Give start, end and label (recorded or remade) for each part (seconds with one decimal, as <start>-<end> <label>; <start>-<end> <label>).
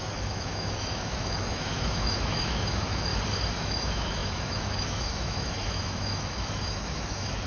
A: 0.0-3.1 remade; 3.1-3.6 recorded; 3.6-7.5 remade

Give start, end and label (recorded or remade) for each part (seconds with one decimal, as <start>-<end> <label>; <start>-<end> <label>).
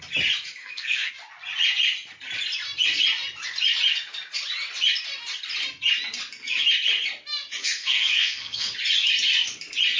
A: 0.0-0.6 recorded; 0.6-1.1 remade; 1.1-7.6 recorded; 7.6-8.7 remade; 8.7-10.0 recorded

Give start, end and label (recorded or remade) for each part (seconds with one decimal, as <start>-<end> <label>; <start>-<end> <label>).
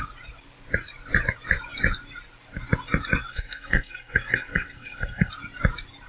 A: 0.0-3.3 recorded; 3.3-5.3 remade; 5.3-6.1 recorded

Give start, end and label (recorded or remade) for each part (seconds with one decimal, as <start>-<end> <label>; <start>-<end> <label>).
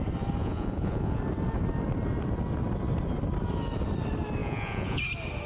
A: 0.0-0.4 recorded; 0.4-1.2 remade; 1.2-4.4 recorded; 4.4-5.0 remade; 5.0-5.5 recorded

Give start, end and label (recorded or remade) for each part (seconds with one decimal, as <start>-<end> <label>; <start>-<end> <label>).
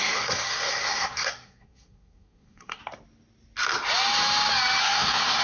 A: 0.0-2.8 remade; 2.8-4.8 recorded; 4.8-5.4 remade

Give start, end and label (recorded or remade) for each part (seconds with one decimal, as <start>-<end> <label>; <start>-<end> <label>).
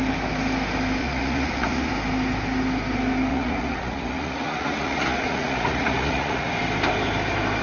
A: 0.0-1.0 recorded; 1.0-1.9 remade; 1.9-3.3 recorded; 3.3-6.5 remade; 6.5-7.6 recorded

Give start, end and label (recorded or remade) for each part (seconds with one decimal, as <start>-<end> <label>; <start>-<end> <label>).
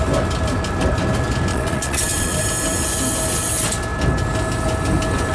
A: 0.0-1.5 recorded; 1.5-2.4 remade; 2.4-5.3 recorded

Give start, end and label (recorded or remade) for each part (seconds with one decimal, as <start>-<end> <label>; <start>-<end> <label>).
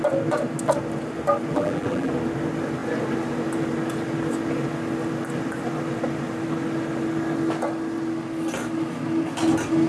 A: 0.0-1.5 recorded; 1.5-2.1 remade; 2.1-9.9 recorded